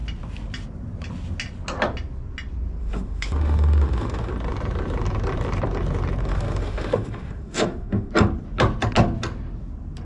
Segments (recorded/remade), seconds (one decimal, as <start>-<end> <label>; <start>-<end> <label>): 0.0-2.8 recorded; 2.8-4.3 remade; 4.3-6.2 recorded; 6.2-8.1 remade; 8.1-10.1 recorded